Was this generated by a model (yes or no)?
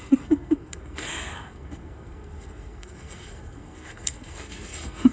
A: yes